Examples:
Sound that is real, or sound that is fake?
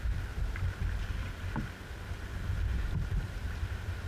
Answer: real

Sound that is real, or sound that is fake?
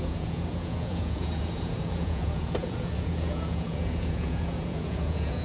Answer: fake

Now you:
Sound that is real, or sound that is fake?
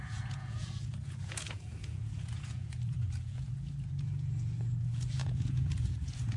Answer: fake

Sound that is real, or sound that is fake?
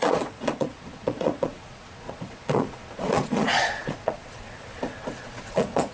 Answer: fake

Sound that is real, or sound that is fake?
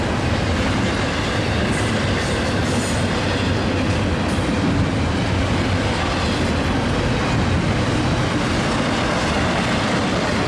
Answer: real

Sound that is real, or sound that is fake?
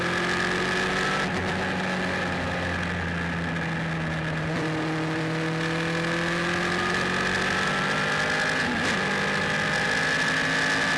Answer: real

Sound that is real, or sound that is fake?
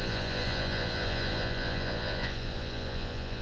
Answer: fake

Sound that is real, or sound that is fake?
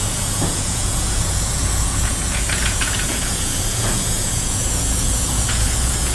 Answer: fake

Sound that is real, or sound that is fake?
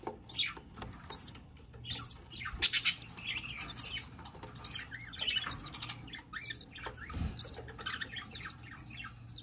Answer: real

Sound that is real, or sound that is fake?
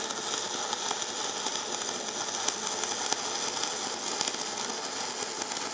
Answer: real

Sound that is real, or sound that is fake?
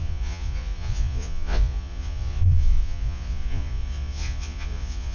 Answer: fake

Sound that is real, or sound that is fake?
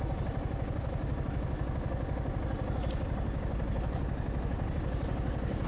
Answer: real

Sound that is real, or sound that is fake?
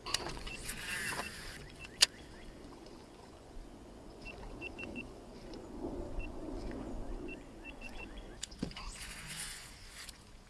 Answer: fake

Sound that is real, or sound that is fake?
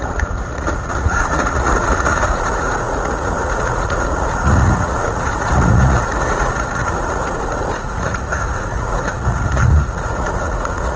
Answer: fake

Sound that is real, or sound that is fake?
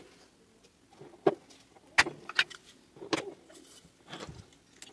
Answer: real